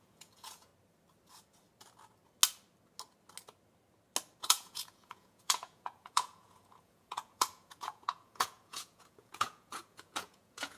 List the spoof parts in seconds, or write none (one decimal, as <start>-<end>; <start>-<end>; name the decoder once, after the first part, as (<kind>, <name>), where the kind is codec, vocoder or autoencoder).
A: 0.0-0.7 (vocoder, Vocos); 4.4-10.8